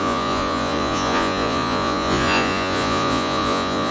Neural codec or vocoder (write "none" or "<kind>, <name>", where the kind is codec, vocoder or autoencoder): vocoder, Vocos